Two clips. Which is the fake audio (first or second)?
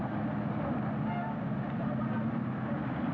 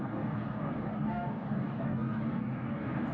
second